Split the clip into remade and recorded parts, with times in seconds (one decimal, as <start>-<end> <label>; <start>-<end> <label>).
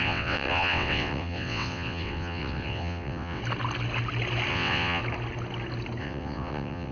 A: 0.0-3.4 remade; 3.4-4.5 recorded; 4.5-5.0 remade; 5.0-6.0 recorded; 6.0-6.9 remade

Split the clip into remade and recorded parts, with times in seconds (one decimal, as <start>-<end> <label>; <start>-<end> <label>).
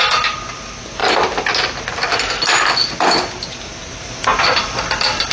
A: 0.0-5.3 recorded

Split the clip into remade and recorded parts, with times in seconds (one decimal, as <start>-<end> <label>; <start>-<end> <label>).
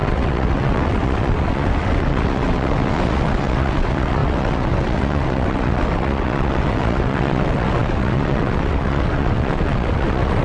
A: 0.0-10.4 remade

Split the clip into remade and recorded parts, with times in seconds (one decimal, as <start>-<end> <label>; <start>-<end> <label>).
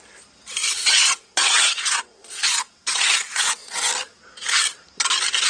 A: 0.0-0.6 recorded; 0.6-3.9 remade; 3.9-5.5 recorded